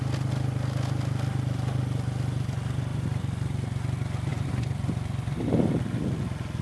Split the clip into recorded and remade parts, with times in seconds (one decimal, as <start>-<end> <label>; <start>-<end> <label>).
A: 0.0-4.3 recorded; 4.3-6.6 remade